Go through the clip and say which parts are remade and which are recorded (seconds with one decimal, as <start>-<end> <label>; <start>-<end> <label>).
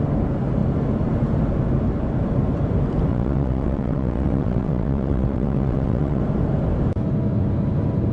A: 0.0-3.1 recorded; 3.1-6.2 remade; 6.2-8.1 recorded